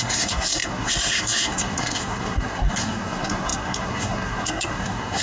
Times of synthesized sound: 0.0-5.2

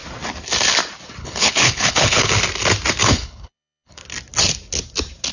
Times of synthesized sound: 1.2-2.4; 3.0-4.0